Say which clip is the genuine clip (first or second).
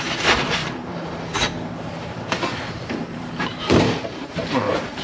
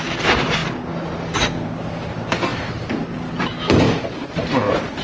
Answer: second